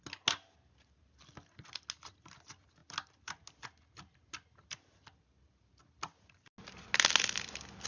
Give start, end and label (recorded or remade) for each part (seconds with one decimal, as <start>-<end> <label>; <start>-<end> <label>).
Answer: 0.0-7.9 recorded